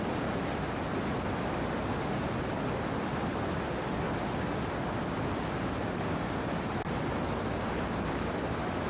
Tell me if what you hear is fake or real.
real